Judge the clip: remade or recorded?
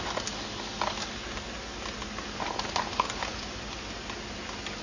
recorded